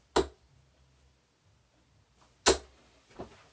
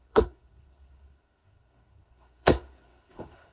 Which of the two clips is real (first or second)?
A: first